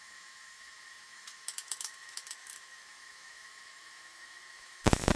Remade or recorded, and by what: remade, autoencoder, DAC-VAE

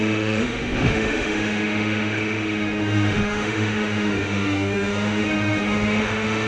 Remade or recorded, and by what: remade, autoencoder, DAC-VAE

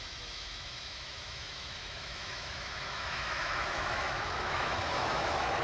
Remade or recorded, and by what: remade, autoencoder, DAC-VAE